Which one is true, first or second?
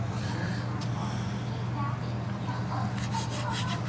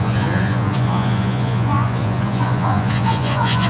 first